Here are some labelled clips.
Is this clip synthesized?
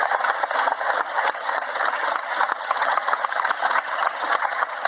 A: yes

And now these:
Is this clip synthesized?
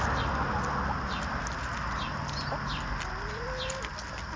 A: no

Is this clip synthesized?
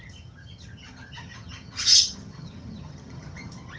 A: yes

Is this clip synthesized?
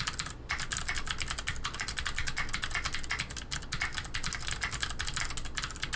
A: no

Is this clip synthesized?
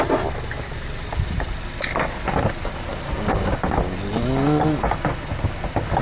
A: no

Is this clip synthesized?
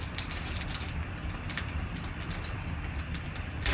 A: no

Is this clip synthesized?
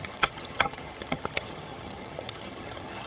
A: yes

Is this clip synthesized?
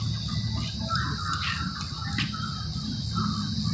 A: no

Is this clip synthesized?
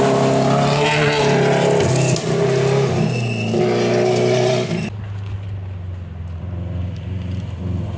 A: no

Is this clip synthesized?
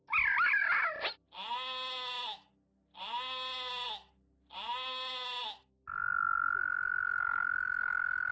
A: no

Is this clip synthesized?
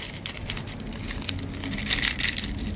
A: no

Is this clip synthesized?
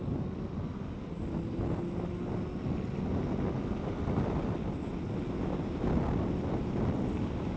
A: no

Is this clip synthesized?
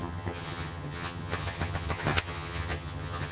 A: yes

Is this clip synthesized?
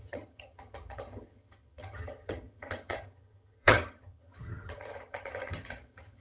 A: yes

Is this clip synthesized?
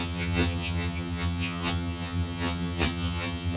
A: yes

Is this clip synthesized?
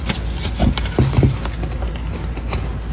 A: no